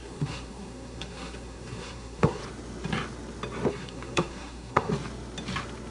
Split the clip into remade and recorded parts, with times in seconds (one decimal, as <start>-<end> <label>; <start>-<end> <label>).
0.0-2.4 remade; 2.4-3.7 recorded; 3.7-4.9 remade; 4.9-5.9 recorded